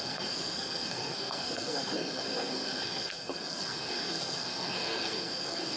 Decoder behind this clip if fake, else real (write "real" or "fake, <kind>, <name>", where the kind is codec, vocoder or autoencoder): fake, codec, SNAC